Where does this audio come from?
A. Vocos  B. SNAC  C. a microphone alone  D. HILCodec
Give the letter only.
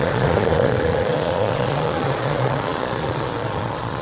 A